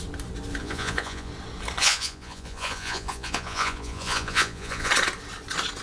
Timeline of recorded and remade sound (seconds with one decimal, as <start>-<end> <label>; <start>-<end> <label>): 0.0-0.6 recorded; 0.6-1.3 remade; 1.3-1.8 recorded; 1.8-4.9 remade; 4.9-5.8 recorded